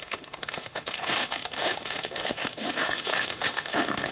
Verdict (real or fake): fake